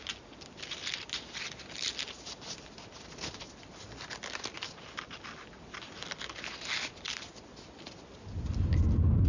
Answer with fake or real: real